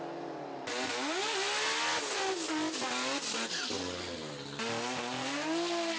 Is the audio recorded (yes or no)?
yes